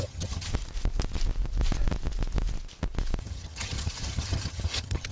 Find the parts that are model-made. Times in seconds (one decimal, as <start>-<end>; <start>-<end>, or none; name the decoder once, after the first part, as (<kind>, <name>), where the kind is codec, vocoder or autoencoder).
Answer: 0.0-0.5 (vocoder, HiFi-GAN); 3.2-5.1